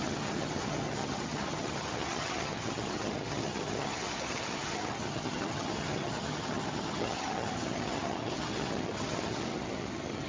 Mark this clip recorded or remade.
remade